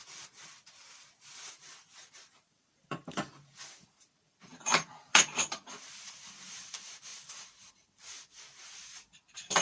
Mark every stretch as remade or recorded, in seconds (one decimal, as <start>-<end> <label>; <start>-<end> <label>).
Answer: 0.0-1.5 recorded; 1.5-9.6 remade